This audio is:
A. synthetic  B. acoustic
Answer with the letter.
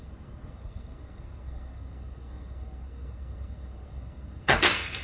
A